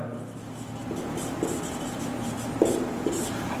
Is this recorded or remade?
recorded